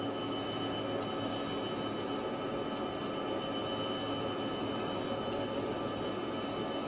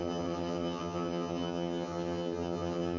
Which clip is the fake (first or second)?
second